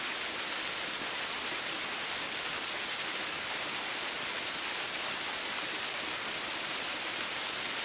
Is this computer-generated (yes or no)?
no